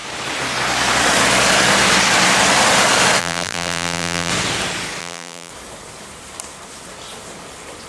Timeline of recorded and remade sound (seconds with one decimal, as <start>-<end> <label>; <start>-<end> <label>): 0.0-3.2 recorded; 3.2-4.3 remade; 4.3-5.0 recorded; 5.0-5.5 remade; 5.5-7.9 recorded